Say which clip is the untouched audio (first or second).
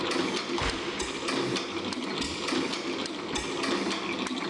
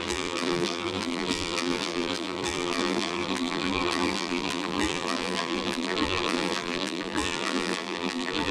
first